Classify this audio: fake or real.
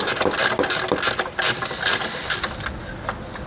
real